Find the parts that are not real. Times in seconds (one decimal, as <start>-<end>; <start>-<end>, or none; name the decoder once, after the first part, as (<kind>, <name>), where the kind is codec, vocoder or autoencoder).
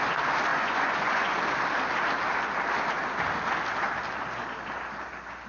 0.5-1.4 (vocoder, Vocos)